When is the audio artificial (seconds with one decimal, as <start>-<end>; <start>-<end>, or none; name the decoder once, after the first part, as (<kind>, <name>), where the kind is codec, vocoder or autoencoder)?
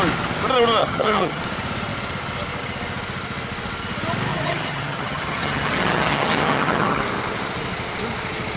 0.8-1.4 (vocoder, HiFi-GAN); 4.3-7.0